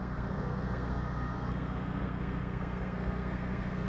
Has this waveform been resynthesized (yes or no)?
yes